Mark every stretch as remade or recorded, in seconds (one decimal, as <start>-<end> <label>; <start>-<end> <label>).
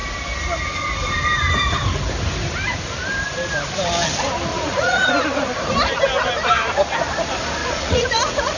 0.0-4.5 recorded; 4.5-5.1 remade; 5.1-7.6 recorded; 7.6-8.6 remade